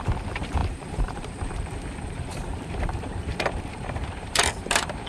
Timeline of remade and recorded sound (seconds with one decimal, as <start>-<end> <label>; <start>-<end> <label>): 0.0-5.1 remade